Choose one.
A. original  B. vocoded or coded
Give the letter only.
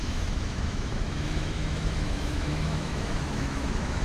B